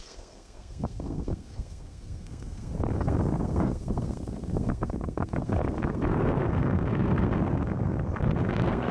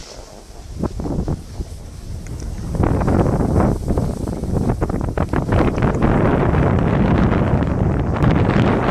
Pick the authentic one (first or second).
second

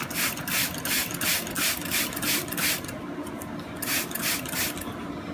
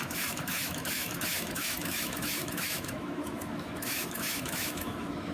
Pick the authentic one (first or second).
first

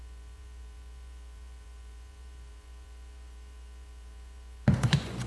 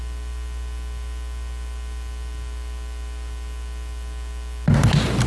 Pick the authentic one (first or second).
second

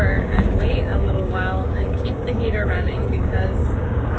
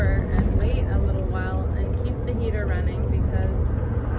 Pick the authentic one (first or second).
second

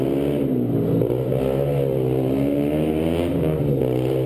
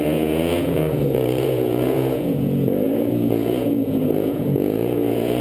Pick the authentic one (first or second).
first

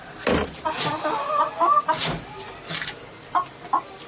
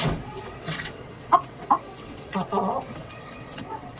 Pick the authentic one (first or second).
first